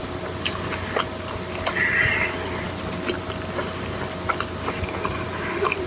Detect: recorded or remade recorded